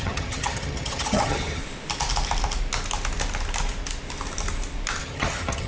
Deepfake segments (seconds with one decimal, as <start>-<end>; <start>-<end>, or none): 0.0-1.6; 5.0-5.7